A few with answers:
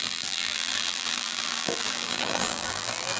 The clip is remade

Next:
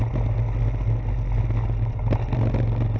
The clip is recorded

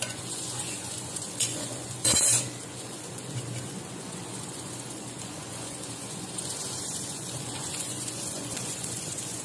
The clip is remade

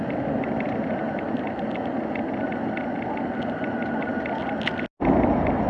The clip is recorded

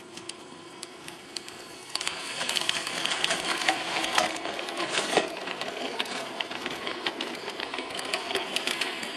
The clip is remade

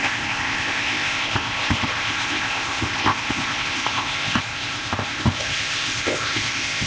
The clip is remade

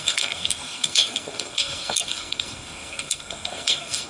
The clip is remade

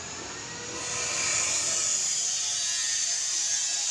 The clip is recorded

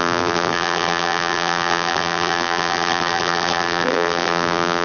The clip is remade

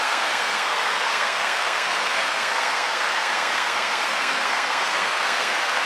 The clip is remade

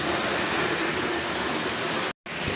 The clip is recorded